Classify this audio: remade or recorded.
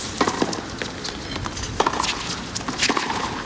recorded